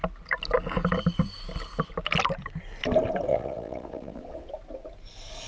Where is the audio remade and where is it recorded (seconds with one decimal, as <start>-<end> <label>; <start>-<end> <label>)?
0.0-3.3 recorded; 3.3-4.5 remade; 4.5-5.5 recorded

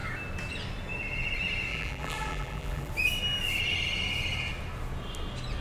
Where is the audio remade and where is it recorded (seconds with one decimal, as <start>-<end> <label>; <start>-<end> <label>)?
0.0-1.7 recorded; 1.7-2.9 remade; 2.9-5.6 recorded

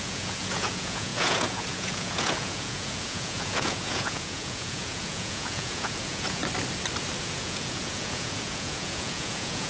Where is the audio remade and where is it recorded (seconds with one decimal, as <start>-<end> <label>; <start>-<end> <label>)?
0.0-6.4 remade; 6.4-7.2 recorded; 7.2-9.7 remade